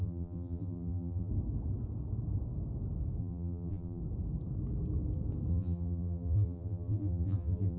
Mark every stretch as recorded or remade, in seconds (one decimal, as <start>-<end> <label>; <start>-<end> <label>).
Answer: 0.0-1.3 remade; 1.3-3.2 recorded; 3.2-4.0 remade; 4.0-5.5 recorded; 5.5-7.8 remade